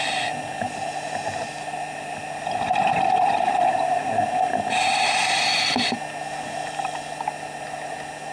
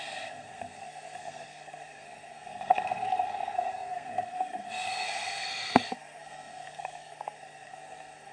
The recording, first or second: first